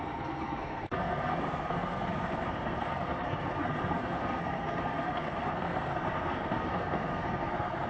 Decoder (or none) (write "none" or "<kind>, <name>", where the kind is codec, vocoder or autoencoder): codec, SNAC